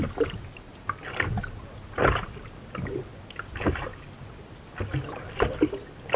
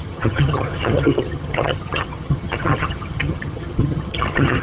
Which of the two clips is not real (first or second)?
second